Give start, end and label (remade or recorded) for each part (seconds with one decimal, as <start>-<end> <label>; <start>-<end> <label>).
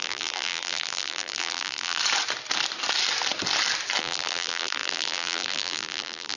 0.0-2.0 remade; 2.0-4.0 recorded; 4.0-6.4 remade